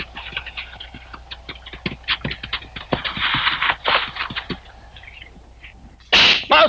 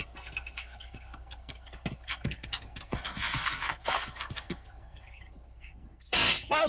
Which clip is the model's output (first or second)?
second